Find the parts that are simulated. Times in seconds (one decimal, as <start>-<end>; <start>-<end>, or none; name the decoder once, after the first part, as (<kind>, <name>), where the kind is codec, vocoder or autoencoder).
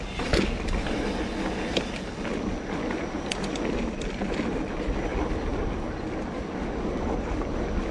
none